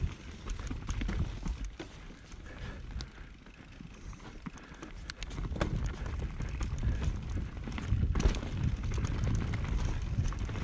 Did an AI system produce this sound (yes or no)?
no